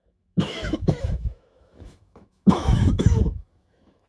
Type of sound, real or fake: fake